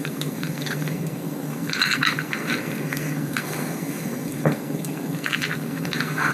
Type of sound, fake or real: fake